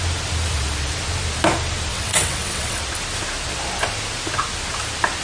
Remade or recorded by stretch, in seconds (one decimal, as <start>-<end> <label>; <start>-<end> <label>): 0.0-1.9 recorded; 1.9-2.8 remade; 2.8-5.2 recorded